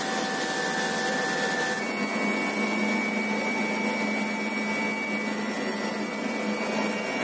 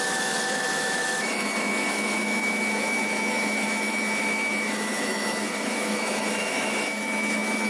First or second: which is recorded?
first